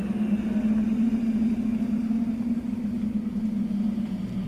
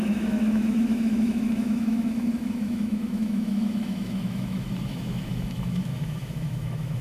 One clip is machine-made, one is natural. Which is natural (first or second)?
first